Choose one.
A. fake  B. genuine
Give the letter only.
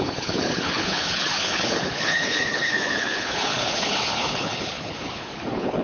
A